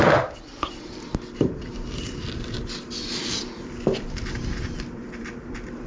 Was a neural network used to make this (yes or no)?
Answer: yes